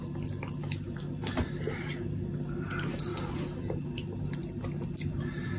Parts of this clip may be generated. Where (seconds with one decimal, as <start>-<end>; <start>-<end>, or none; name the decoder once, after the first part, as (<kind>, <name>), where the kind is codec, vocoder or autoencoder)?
none